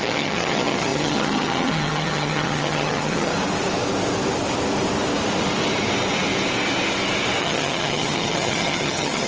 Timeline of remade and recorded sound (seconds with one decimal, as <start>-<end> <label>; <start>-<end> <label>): 0.0-3.3 remade; 3.3-7.4 recorded; 7.4-9.3 remade